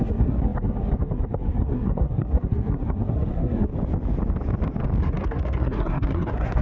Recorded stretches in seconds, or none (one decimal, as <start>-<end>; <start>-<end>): 3.7-5.0